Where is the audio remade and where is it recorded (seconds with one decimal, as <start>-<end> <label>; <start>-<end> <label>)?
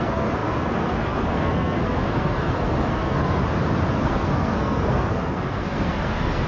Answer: 0.0-3.4 remade; 3.4-3.9 recorded; 3.9-6.5 remade